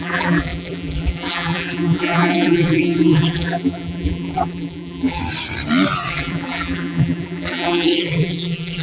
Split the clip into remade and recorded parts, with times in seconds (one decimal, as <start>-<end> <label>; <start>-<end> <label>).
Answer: 0.0-5.2 remade; 5.2-6.1 recorded; 6.1-8.8 remade